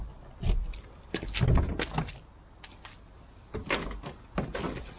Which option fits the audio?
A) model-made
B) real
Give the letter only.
B